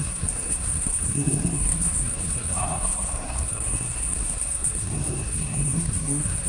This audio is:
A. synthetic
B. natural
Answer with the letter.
A